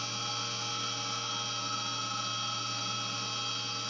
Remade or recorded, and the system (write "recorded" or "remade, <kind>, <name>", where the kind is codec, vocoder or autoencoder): recorded